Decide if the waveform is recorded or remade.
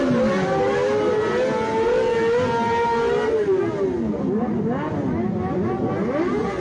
recorded